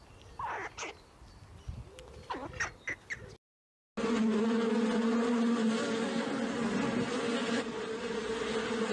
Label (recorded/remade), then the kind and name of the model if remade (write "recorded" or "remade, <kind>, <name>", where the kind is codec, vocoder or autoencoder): recorded